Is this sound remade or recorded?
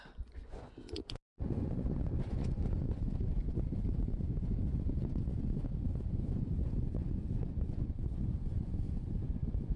remade